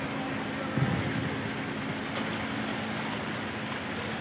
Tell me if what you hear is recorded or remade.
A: recorded